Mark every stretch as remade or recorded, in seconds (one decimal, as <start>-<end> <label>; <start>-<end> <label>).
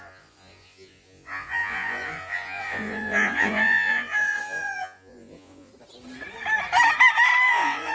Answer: 0.0-5.7 remade; 5.7-7.5 recorded; 7.5-7.9 remade